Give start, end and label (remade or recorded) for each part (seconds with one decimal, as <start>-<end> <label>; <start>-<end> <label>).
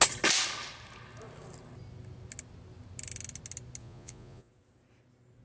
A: 0.0-3.8 recorded; 3.8-4.5 remade; 4.5-5.4 recorded